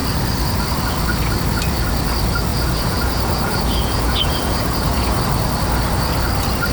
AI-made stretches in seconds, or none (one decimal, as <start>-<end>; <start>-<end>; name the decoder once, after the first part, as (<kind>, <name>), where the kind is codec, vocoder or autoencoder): 2.5-5.2 (vocoder, Vocos)